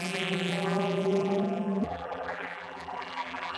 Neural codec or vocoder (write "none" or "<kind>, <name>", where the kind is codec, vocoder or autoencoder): vocoder, BigVGAN v2